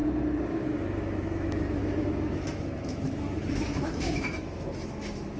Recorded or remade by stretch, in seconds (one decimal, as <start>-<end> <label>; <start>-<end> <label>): 0.0-0.5 recorded; 0.5-5.4 remade